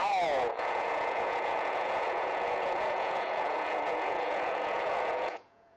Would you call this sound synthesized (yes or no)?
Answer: yes